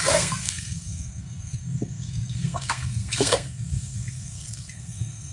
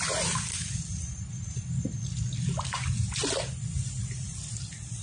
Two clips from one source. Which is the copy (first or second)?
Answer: first